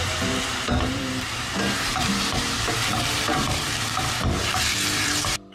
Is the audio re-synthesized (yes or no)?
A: yes